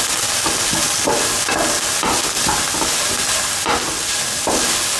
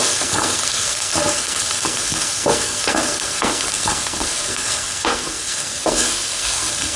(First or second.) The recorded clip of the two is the first